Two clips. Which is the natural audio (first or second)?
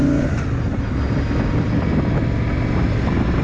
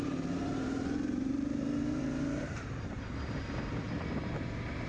first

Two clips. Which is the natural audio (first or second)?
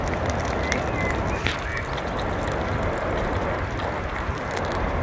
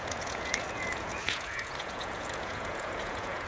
first